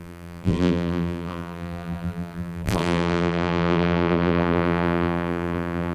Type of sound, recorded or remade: remade